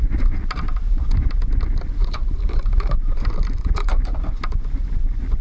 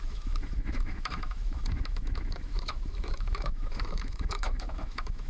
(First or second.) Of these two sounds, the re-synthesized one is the second